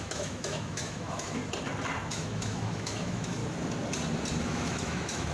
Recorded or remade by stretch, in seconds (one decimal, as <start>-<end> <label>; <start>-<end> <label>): 0.0-1.4 remade; 1.4-2.1 recorded; 2.1-3.4 remade; 3.4-4.4 recorded; 4.4-5.3 remade